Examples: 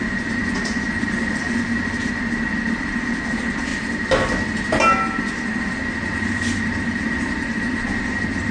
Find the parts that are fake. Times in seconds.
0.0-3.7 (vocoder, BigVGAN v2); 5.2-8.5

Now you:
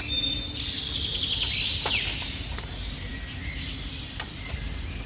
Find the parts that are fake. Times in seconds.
3.1-4.5 (vocoder, BigVGAN v2)